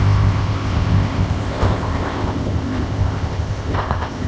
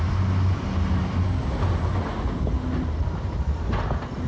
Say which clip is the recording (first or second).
second